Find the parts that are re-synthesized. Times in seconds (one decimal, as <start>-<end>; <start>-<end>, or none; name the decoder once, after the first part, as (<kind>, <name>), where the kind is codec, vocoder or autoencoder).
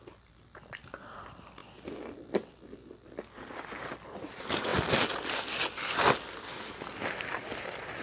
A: none